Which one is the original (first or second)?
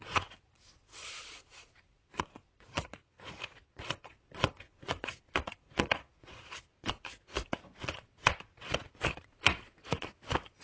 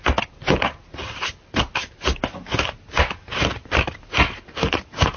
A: second